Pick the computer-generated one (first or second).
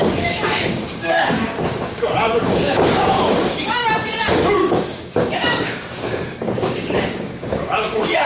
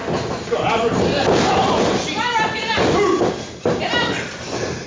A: first